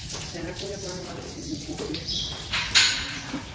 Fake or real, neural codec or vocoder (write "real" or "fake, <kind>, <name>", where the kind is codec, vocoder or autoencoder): fake, vocoder, Vocos